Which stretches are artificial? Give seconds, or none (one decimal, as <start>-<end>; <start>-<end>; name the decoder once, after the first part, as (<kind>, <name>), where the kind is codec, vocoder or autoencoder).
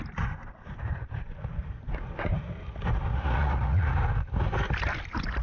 3.1-3.9 (vocoder, Vocos)